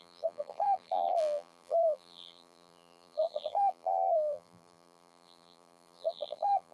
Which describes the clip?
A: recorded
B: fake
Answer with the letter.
B